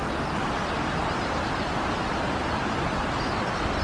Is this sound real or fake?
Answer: real